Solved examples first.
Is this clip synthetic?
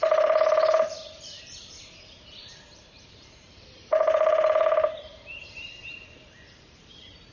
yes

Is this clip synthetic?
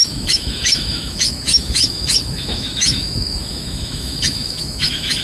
yes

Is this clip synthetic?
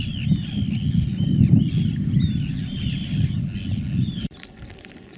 no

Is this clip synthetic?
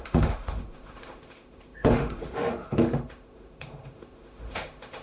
yes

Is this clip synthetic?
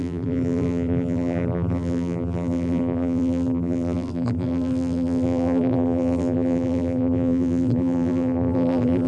yes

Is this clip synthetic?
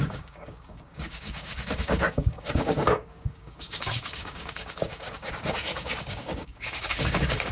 yes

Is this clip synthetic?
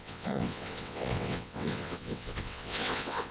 yes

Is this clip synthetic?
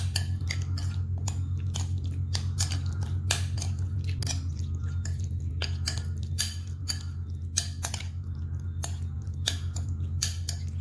no